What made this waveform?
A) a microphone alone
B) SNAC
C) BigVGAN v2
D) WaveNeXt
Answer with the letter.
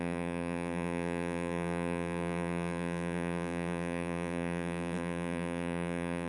C